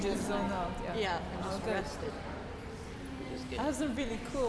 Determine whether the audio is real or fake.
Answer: real